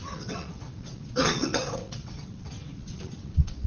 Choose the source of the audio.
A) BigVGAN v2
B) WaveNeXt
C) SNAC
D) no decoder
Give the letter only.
B